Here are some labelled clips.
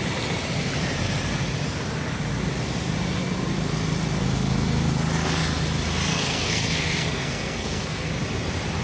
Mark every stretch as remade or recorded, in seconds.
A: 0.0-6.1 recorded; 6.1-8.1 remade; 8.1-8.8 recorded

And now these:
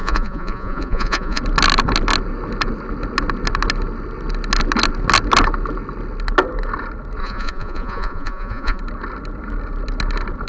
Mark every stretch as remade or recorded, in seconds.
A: 0.0-1.4 remade; 1.4-7.2 recorded; 7.2-8.8 remade; 8.8-10.5 recorded

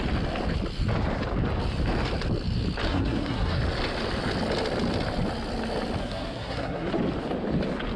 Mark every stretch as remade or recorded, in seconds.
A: 0.0-2.9 recorded; 2.9-3.6 remade; 3.6-6.0 recorded; 6.0-6.9 remade; 6.9-8.0 recorded

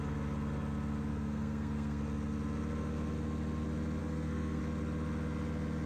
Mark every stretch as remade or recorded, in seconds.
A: 0.0-1.1 recorded; 1.1-2.0 remade; 2.0-4.0 recorded; 4.0-4.6 remade; 4.6-5.9 recorded

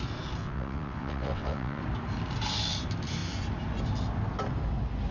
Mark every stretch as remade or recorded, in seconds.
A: 0.0-0.4 recorded; 0.4-1.8 remade; 1.8-5.1 recorded